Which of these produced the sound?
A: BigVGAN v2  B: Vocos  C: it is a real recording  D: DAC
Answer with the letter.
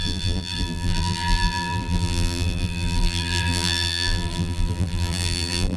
A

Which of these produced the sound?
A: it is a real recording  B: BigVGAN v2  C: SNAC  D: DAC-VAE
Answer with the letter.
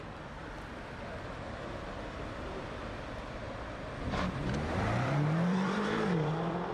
B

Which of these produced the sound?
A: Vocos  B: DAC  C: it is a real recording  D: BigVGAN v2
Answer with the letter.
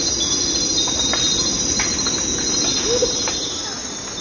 C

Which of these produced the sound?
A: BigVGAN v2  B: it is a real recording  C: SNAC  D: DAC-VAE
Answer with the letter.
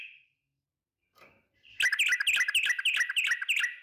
B